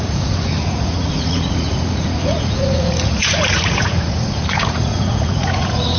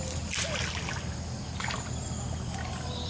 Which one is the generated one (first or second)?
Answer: first